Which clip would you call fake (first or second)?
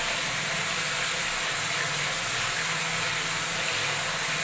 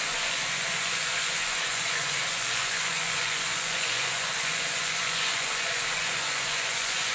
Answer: second